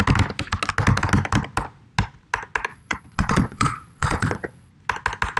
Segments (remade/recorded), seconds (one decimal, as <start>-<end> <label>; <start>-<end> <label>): 0.0-2.7 recorded; 2.7-4.7 remade; 4.7-5.4 recorded